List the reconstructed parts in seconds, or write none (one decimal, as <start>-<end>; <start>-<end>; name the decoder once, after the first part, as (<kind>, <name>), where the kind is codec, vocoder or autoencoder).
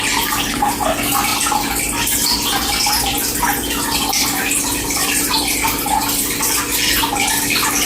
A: none